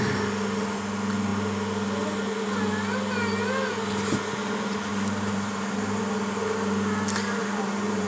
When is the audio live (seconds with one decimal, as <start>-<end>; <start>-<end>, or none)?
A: 0.0-4.9; 6.0-7.4